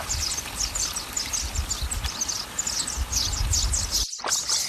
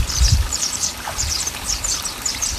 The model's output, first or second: second